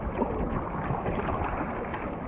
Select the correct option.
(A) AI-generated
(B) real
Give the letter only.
B